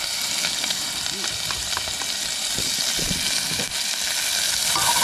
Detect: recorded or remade recorded